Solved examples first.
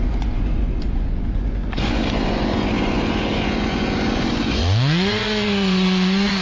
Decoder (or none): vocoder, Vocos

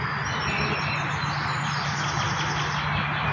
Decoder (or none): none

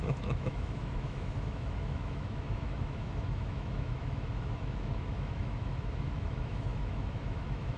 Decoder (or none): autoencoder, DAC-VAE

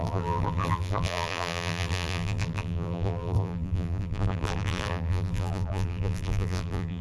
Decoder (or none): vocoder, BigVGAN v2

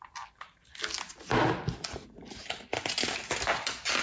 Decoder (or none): none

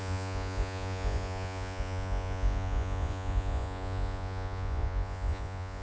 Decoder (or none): vocoder, Vocos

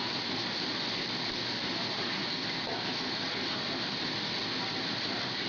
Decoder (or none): none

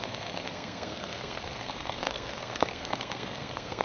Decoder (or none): codec, SNAC